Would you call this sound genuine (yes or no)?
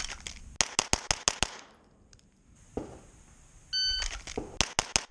yes